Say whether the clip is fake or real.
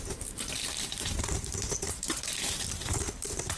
fake